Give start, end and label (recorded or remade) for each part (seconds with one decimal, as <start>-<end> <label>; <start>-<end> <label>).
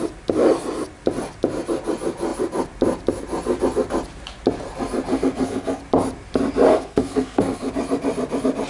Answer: 0.0-5.1 recorded; 5.1-5.8 remade; 5.8-6.7 recorded; 6.7-7.7 remade; 7.7-8.7 recorded